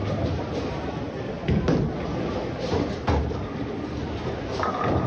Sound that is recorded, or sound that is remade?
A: recorded